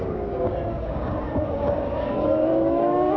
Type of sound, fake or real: fake